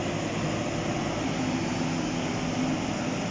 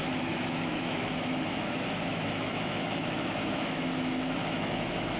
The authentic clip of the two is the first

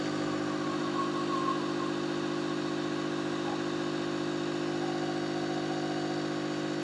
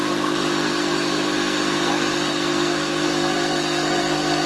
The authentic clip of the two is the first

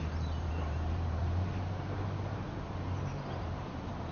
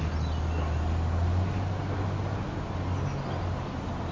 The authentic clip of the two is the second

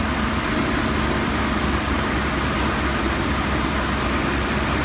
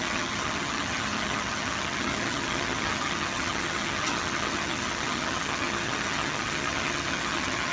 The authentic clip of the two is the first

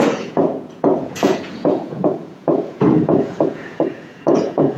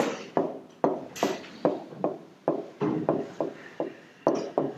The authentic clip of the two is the second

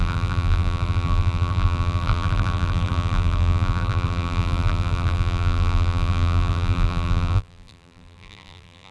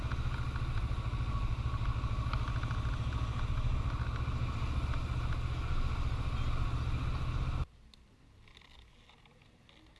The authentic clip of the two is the second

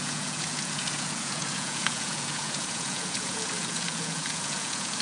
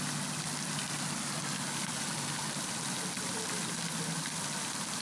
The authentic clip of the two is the second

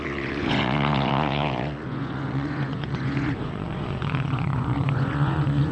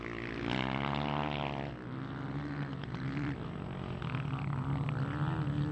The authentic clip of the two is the second